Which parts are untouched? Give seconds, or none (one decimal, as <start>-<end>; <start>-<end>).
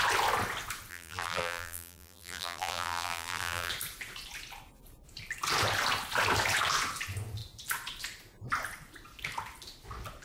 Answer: 0.0-0.9; 3.7-10.2